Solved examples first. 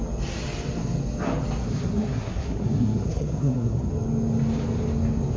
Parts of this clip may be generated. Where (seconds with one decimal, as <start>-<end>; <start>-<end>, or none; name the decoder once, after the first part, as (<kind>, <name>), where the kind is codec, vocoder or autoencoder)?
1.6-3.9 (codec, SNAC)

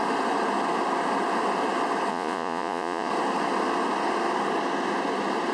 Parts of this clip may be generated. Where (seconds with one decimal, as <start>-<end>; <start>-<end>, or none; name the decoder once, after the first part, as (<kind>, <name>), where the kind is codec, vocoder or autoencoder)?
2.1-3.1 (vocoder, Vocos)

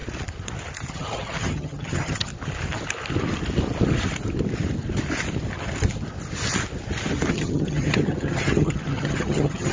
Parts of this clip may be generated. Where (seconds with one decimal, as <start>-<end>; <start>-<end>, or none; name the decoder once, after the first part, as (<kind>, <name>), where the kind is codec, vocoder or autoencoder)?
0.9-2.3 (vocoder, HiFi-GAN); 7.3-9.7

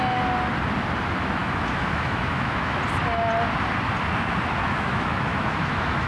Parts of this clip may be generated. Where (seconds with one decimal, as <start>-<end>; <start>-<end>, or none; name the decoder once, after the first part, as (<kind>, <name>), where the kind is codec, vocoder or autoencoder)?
1.4-2.8 (autoencoder, DAC-VAE); 4.6-6.1

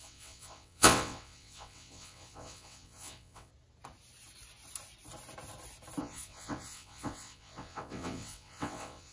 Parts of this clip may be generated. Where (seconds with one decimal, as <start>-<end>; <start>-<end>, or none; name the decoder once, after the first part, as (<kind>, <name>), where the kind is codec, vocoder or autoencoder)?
0.0-3.5 (vocoder, WaveNeXt); 6.0-9.1

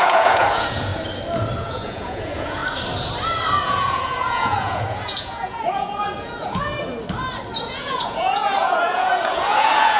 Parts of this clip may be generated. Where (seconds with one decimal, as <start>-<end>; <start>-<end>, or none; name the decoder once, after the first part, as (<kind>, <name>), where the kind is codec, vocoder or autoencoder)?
0.0-0.9 (vocoder, Vocos); 1.6-2.6; 3.6-6.7; 7.6-10.0